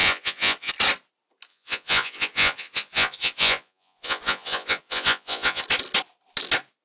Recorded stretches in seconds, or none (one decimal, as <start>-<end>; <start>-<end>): 0.7-1.5; 5.6-6.8